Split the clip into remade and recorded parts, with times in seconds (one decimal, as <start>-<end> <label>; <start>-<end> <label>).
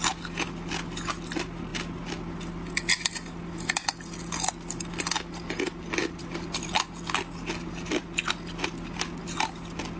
0.0-10.0 recorded